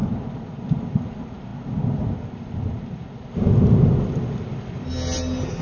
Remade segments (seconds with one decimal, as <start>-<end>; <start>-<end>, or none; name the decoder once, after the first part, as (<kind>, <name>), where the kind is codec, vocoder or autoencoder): none